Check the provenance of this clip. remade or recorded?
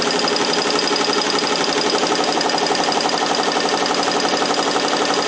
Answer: recorded